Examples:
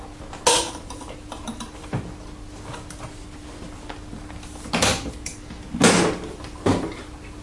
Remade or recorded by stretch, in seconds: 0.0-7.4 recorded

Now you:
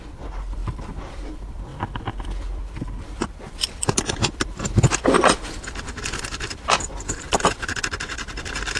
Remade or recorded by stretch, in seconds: 0.0-8.8 remade

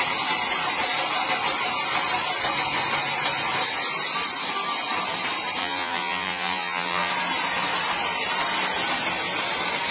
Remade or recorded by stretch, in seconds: 0.0-5.6 recorded; 5.6-7.1 remade; 7.1-9.9 recorded

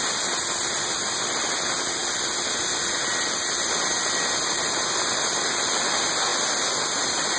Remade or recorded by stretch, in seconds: 0.0-6.3 recorded; 6.3-7.4 remade

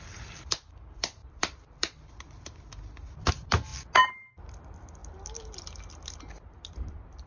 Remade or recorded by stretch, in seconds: 0.0-3.7 remade; 3.7-4.3 recorded; 4.3-5.0 remade; 5.0-6.5 recorded; 6.5-7.3 remade

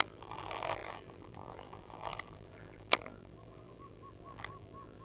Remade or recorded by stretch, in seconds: 0.0-5.0 remade

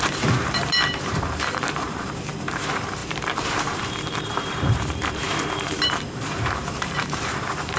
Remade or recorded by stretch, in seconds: 0.0-7.8 remade